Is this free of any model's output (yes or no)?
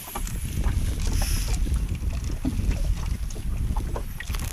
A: yes